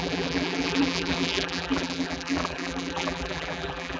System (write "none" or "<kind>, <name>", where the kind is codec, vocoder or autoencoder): vocoder, BigVGAN v2